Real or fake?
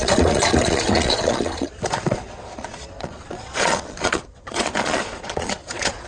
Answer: fake